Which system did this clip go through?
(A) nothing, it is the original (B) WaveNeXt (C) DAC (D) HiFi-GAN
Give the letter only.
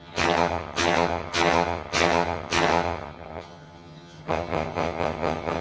D